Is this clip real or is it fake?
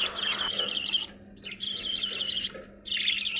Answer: real